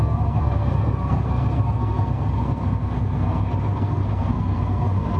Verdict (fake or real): fake